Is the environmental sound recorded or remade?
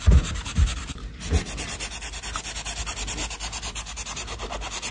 recorded